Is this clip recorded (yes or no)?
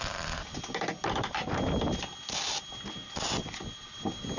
yes